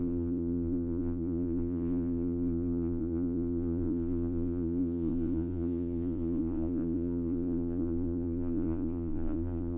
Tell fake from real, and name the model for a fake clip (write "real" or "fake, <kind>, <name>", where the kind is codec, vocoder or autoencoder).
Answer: fake, vocoder, Vocos